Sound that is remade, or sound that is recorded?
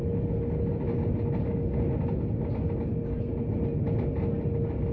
recorded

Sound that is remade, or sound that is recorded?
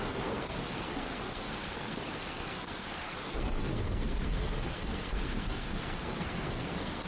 remade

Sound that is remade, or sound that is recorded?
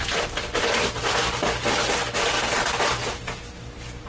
recorded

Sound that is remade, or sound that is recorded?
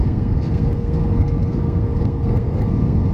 remade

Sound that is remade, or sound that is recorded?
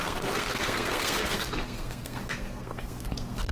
remade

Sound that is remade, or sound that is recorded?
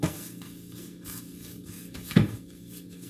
remade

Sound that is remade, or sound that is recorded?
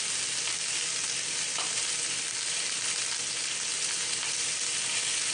recorded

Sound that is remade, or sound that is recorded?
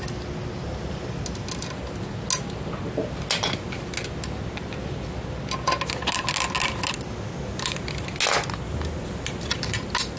recorded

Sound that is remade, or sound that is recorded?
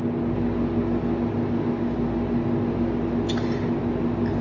recorded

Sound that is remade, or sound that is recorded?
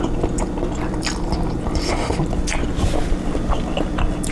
recorded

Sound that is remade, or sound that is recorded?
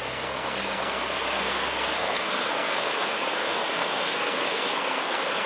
remade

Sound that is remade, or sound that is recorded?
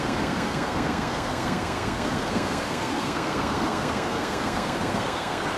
remade